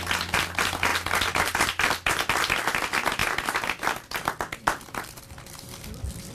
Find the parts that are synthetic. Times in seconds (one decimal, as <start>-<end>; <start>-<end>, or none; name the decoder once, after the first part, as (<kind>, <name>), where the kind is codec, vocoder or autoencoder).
none

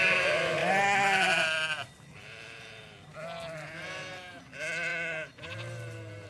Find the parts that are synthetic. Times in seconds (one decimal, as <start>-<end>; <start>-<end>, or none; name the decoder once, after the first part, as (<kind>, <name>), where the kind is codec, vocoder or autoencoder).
0.0-6.3 (vocoder, BigVGAN v2)

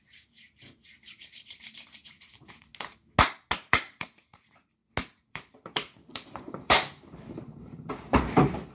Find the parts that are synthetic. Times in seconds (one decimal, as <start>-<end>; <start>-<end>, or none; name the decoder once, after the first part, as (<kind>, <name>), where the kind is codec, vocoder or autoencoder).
0.0-2.7 (vocoder, BigVGAN v2); 3.7-4.8; 5.3-8.7

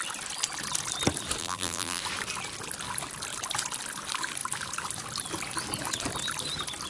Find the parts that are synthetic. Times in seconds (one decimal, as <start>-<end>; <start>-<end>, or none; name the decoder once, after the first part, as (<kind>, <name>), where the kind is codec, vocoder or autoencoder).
1.4-2.0 (vocoder, BigVGAN v2)